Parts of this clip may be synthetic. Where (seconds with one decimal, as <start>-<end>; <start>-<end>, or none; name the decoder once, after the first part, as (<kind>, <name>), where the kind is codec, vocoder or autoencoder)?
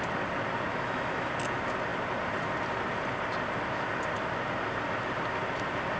0.7-1.3 (autoencoder, DAC-VAE)